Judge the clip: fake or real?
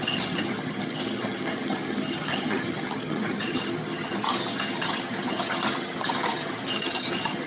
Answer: fake